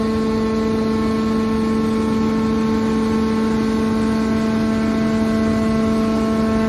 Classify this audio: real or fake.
real